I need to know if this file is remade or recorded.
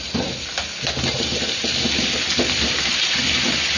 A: recorded